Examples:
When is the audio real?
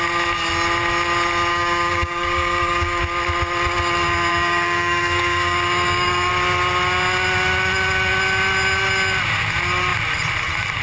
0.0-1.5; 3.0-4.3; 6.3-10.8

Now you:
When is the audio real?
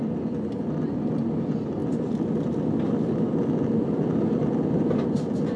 0.0-5.6